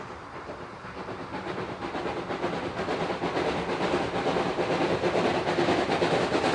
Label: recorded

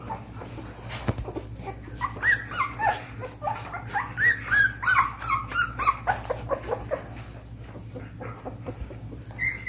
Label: recorded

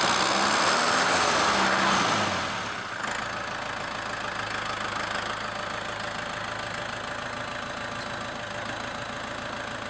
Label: recorded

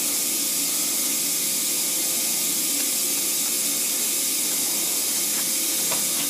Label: recorded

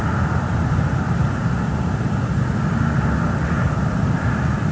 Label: recorded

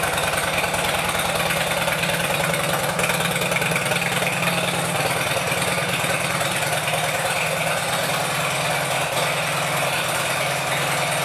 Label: recorded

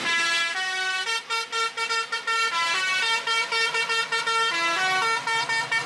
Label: recorded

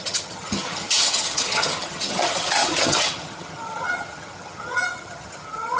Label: remade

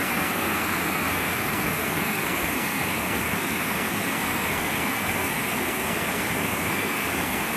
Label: remade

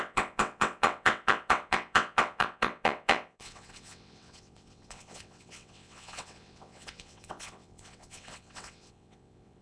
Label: remade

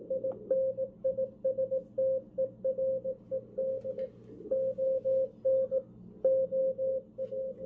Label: recorded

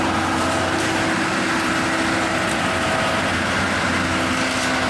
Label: recorded